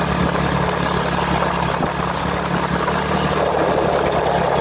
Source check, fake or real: real